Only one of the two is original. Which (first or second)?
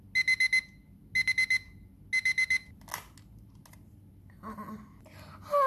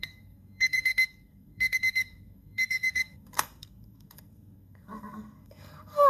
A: first